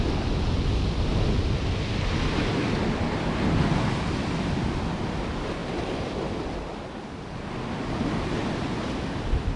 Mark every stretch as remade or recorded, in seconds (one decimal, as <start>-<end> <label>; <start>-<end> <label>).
0.0-9.6 recorded